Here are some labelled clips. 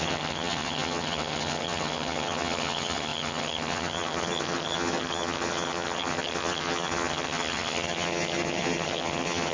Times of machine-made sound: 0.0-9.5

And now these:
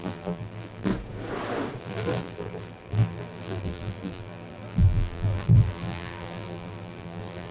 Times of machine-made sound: 0.0-0.9; 1.8-7.5

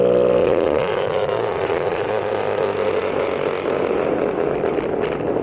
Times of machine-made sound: 0.4-2.3

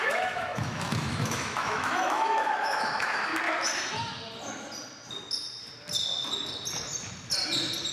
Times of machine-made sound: 0.0-3.3

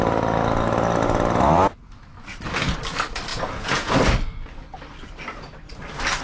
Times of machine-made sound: 3.3-3.9